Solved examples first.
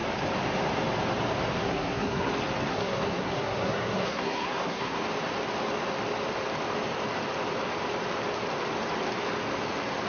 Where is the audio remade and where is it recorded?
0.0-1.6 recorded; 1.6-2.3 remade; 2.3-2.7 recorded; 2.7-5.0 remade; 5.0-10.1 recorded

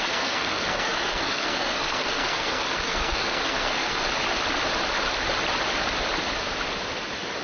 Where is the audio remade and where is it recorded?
0.0-4.0 remade; 4.0-7.4 recorded

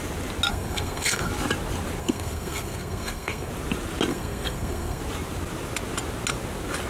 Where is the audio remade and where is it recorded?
0.0-0.5 recorded; 0.5-1.3 remade; 1.3-2.0 recorded; 2.0-3.5 remade; 3.5-4.1 recorded; 4.1-5.0 remade; 5.0-6.9 recorded